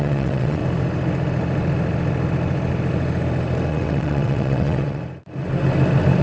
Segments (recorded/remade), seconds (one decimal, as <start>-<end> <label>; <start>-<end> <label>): 0.0-0.6 remade; 0.6-3.7 recorded; 3.7-5.0 remade; 5.0-6.2 recorded

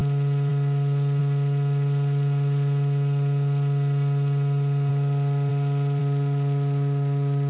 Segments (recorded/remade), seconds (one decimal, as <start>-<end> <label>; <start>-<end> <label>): 0.0-7.5 recorded

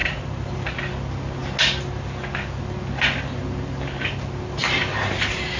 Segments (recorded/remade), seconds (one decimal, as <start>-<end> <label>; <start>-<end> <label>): 0.0-0.8 remade; 0.8-4.6 recorded; 4.6-5.6 remade

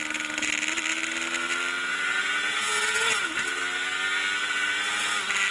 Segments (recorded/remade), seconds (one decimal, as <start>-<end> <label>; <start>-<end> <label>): 0.0-1.9 recorded; 1.9-3.6 remade; 3.6-5.5 recorded

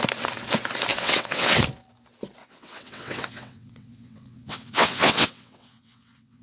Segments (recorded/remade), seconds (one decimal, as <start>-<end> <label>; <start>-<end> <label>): 0.0-0.9 recorded; 0.9-1.6 remade; 1.6-2.4 recorded; 2.4-6.4 remade

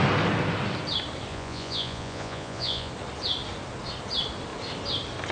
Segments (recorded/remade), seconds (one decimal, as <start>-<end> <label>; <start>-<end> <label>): 0.0-1.3 recorded; 1.3-2.9 remade; 2.9-5.3 recorded